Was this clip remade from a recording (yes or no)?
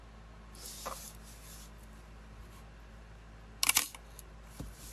no